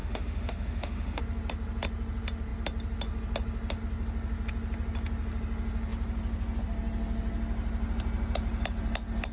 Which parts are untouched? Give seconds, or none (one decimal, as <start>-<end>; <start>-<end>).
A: 1.2-9.3